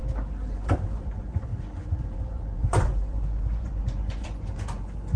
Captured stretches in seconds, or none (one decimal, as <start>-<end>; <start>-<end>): 0.0-0.5